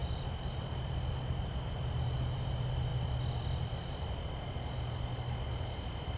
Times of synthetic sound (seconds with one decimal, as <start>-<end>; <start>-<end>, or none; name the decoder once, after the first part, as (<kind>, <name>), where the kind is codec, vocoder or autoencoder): 0.0-2.5 (vocoder, BigVGAN v2); 2.9-4.1